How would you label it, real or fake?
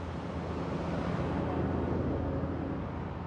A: real